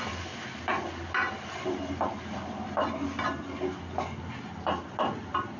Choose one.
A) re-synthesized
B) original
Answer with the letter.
B